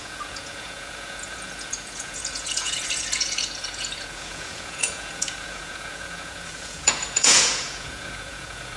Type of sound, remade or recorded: remade